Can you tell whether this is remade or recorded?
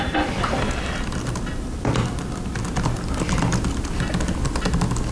recorded